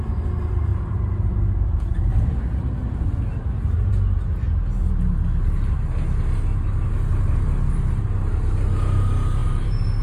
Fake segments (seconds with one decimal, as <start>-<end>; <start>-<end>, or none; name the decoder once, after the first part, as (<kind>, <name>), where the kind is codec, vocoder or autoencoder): 0.7-2.4 (vocoder, BigVGAN v2); 9.4-10.0